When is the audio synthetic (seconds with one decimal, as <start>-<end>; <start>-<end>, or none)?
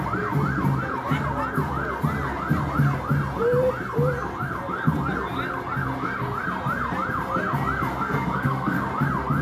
7.9-8.8